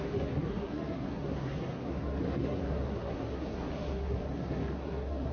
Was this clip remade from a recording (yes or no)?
yes